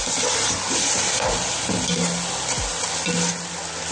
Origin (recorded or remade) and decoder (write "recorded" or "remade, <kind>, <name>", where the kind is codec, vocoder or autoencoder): recorded